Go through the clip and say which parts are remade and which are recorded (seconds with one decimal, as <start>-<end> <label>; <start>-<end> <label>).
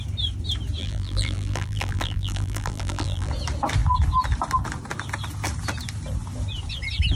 0.0-0.8 recorded; 0.8-3.3 remade; 3.3-7.2 recorded